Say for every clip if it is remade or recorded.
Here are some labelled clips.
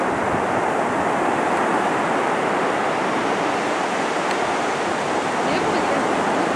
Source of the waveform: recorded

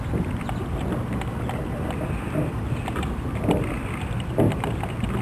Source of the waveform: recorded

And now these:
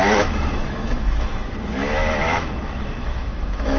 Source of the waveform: remade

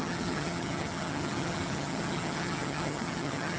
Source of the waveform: remade